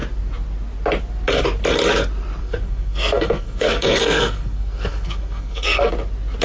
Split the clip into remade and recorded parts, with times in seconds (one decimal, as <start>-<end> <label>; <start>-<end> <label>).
0.0-2.4 recorded; 2.4-5.9 remade; 5.9-6.4 recorded